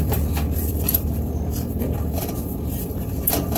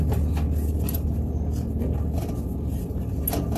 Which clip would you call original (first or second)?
second